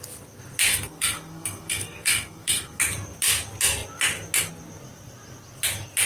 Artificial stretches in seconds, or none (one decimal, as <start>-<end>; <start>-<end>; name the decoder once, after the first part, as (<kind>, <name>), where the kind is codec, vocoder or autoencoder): 0.7-2.8 (codec, SNAC)